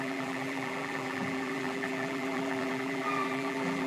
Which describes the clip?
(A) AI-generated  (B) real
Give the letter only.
A